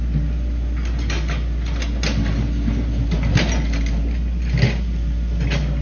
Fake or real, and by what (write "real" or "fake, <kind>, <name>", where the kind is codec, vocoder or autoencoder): real